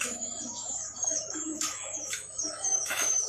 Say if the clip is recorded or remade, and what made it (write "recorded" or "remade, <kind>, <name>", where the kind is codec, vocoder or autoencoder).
remade, autoencoder, DAC-VAE